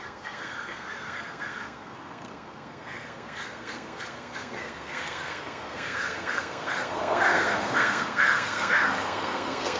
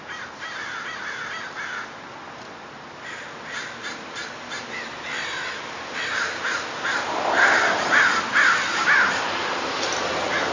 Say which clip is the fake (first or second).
first